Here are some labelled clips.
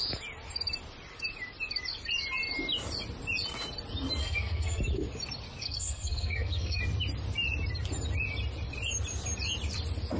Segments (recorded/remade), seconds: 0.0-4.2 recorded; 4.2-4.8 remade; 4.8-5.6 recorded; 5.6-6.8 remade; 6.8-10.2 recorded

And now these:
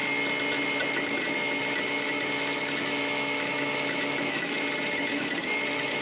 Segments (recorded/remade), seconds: 0.0-0.9 recorded; 0.9-6.0 remade

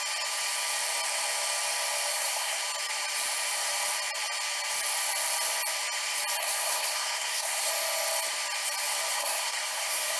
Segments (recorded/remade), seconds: 0.0-2.1 recorded; 2.1-2.6 remade; 2.6-6.4 recorded; 6.4-7.7 remade; 7.7-9.1 recorded; 9.1-10.2 remade

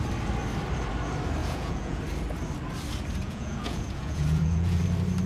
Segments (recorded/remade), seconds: 0.0-1.4 recorded; 1.4-2.0 remade; 2.0-3.2 recorded; 3.2-4.8 remade; 4.8-5.3 recorded

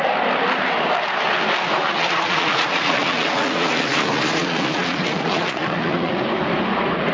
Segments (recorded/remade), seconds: 0.0-1.8 recorded; 1.8-6.1 remade; 6.1-7.1 recorded